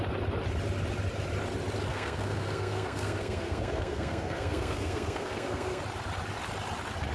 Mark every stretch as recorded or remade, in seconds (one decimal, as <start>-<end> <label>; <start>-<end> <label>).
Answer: 0.0-1.9 recorded; 1.9-5.8 remade; 5.8-7.1 recorded